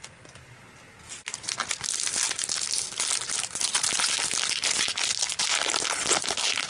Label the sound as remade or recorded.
recorded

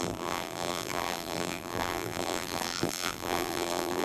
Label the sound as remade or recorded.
remade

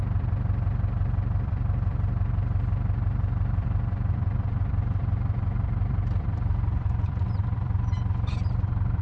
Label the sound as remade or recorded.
remade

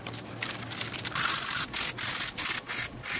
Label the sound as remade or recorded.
recorded